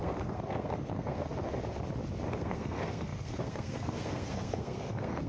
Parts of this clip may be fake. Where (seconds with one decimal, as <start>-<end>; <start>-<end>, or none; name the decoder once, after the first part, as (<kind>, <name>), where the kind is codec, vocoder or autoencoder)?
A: 0.0-1.3 (codec, SNAC); 2.4-5.3